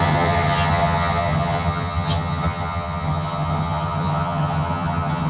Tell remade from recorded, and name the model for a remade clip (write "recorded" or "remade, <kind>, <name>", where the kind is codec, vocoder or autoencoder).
remade, vocoder, HiFi-GAN